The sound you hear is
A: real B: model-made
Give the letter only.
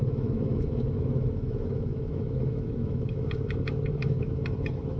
B